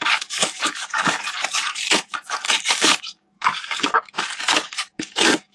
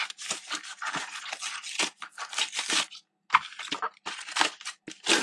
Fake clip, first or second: first